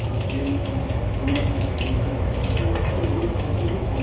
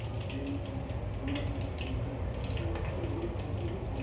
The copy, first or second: first